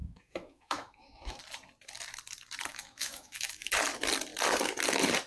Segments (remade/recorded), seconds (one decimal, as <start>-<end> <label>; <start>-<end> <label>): 0.0-1.4 remade; 1.4-2.7 recorded; 2.7-3.7 remade; 3.7-5.3 recorded